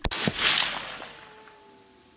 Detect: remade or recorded recorded